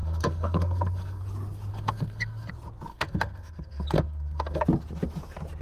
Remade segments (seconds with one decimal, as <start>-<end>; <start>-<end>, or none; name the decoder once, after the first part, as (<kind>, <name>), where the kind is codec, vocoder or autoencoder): 0.0-1.2 (codec, SNAC); 1.7-2.5; 2.9-4.6